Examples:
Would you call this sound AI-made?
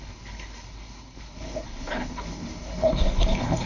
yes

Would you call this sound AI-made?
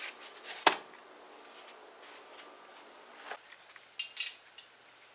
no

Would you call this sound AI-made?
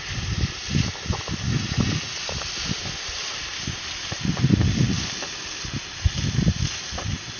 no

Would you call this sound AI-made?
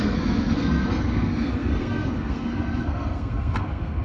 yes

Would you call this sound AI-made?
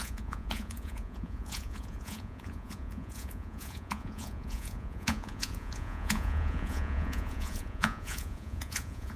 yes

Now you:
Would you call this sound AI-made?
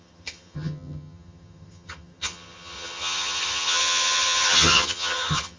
yes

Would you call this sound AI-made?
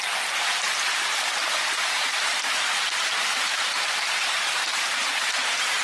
no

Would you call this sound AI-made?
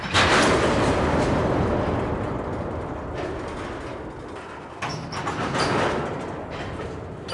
no